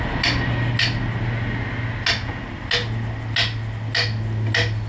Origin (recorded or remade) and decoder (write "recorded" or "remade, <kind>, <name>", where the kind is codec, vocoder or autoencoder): recorded